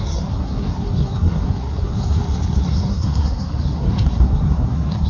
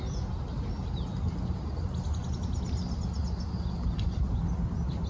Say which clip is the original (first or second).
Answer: second